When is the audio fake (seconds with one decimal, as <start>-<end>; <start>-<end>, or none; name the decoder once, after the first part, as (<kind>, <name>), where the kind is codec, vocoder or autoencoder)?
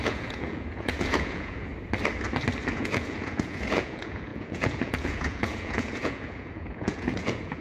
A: 0.0-1.7 (vocoder, Vocos); 2.7-7.6